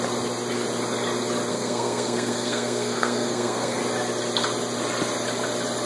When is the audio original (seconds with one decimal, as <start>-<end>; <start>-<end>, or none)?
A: 0.0-1.5; 3.8-5.9